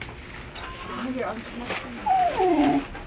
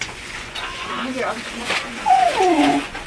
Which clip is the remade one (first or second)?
second